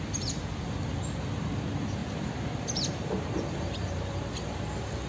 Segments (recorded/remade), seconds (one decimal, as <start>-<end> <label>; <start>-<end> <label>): 0.0-5.1 recorded